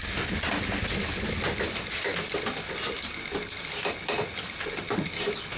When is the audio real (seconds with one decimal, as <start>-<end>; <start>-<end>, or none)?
0.0-5.6